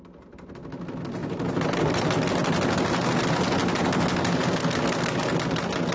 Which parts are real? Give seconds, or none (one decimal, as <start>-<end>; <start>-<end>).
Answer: 0.0-5.9